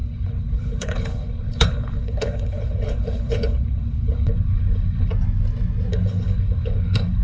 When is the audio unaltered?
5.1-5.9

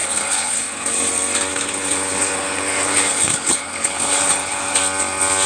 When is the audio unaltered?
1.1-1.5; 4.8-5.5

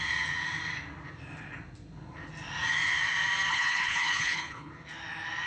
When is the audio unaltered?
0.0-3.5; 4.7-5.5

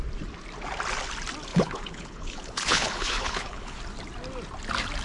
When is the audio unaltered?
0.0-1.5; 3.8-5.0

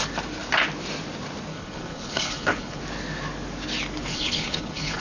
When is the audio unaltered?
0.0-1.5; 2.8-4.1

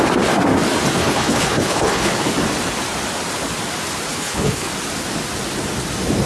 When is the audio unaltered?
0.0-1.0; 2.1-4.1; 4.7-6.3

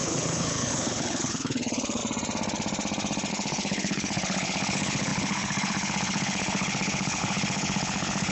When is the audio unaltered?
2.0-3.3

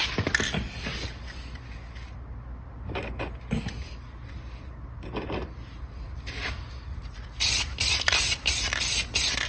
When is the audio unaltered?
0.0-9.5